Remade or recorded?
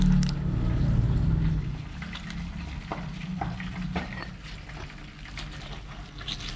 recorded